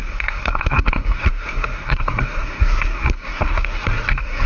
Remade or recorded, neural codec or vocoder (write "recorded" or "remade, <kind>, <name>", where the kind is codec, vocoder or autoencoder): remade, codec, SNAC